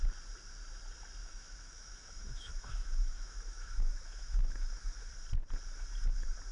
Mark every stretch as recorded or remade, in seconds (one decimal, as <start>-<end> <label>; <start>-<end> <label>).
0.0-1.2 recorded; 1.2-5.1 remade; 5.1-6.5 recorded